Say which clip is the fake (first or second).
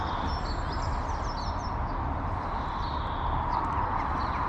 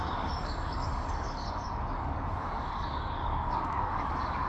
second